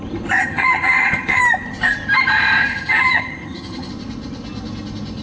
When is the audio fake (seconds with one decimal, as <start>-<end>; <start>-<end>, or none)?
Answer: 0.4-1.4; 2.7-3.9